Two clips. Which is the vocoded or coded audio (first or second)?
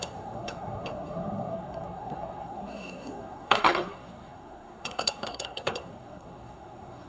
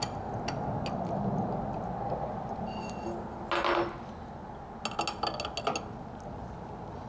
first